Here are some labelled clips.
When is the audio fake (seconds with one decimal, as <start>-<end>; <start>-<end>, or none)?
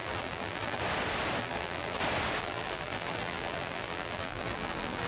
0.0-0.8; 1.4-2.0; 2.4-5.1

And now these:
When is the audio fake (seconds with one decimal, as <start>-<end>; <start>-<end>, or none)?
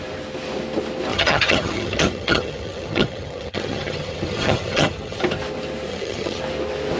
1.1-5.2; 5.9-6.4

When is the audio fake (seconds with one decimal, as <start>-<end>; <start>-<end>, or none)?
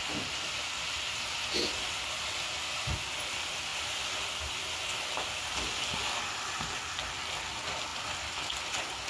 none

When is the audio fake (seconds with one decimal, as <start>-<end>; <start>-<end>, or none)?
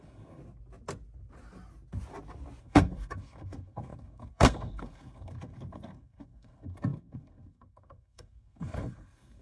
0.0-0.4; 2.6-9.4